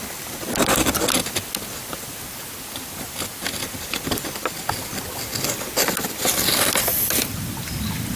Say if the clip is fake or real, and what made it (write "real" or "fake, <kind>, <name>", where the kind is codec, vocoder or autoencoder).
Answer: real